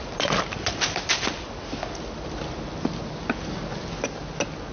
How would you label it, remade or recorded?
recorded